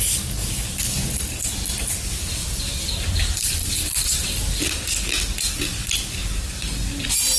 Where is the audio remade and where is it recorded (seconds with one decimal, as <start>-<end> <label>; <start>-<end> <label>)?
0.0-2.4 recorded; 2.4-4.2 remade; 4.2-7.4 recorded